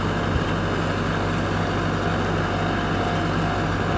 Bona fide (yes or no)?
yes